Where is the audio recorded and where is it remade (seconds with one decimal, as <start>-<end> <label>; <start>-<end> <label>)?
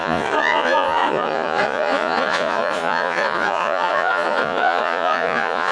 0.0-5.7 remade